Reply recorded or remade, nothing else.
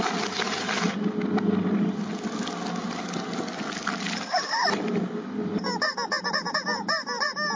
recorded